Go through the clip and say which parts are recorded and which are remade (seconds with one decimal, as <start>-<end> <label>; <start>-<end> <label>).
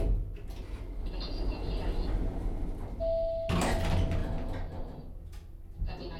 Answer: 0.0-6.2 recorded